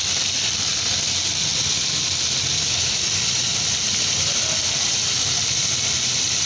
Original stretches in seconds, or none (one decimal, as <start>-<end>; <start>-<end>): 0.0-6.5